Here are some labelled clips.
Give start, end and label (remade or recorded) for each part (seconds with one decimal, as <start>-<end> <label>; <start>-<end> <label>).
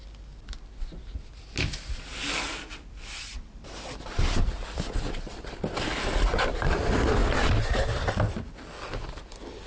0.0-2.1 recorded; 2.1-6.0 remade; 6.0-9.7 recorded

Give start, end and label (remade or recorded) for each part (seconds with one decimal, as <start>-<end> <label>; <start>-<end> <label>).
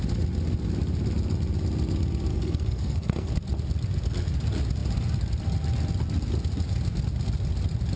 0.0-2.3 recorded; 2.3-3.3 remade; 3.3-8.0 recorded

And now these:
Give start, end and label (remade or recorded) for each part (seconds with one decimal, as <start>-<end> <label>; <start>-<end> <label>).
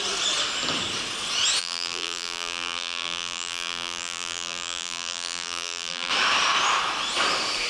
0.0-1.6 recorded; 1.6-6.1 remade; 6.1-7.7 recorded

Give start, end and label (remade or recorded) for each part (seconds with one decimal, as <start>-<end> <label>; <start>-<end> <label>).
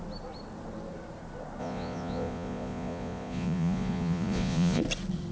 0.0-1.6 recorded; 1.6-4.8 remade; 4.8-5.3 recorded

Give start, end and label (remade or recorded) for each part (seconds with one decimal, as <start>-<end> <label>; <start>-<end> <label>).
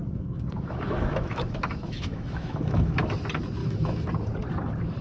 0.0-3.0 remade; 3.0-3.6 recorded; 3.6-4.1 remade; 4.1-5.0 recorded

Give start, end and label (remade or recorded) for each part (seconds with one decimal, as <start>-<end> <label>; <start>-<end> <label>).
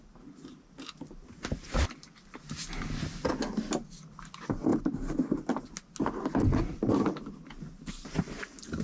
0.0-8.8 recorded